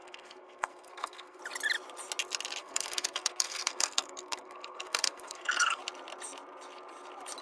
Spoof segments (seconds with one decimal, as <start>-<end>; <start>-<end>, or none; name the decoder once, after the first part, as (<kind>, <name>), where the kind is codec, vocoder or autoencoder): 0.0-1.4 (codec, SNAC); 2.6-5.8